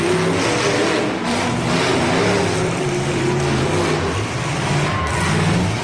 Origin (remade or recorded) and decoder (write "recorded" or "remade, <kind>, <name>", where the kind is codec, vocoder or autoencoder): recorded